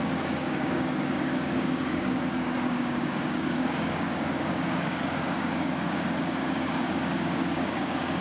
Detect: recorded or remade remade